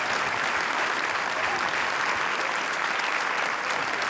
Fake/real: real